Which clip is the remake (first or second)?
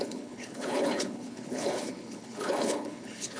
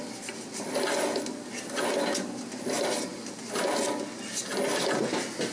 first